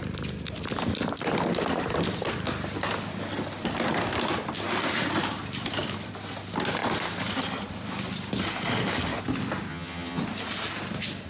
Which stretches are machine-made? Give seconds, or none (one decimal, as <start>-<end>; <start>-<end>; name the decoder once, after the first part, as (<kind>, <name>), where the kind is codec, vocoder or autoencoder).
9.7-10.2 (vocoder, HiFi-GAN)